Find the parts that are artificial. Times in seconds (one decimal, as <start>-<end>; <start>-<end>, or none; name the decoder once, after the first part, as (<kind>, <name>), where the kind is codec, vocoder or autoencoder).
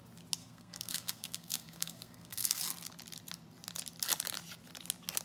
0.4-2.6 (codec, SNAC)